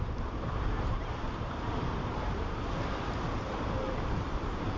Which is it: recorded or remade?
remade